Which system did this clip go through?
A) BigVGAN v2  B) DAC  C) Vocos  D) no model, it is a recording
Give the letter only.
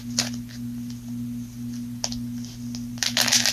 D